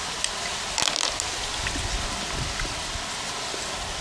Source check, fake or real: real